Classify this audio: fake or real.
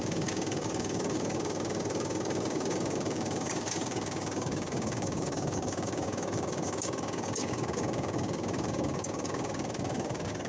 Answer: fake